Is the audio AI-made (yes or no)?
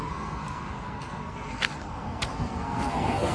yes